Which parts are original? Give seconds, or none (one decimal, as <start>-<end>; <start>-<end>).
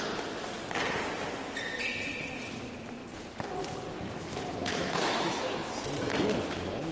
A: 0.0-4.7; 5.7-6.9